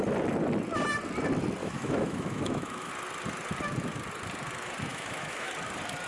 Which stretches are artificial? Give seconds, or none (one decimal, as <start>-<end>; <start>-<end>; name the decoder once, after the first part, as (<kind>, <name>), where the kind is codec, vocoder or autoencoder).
1.6-2.9 (autoencoder, DAC-VAE); 4.9-5.5